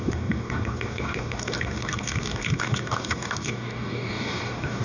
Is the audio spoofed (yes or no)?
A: yes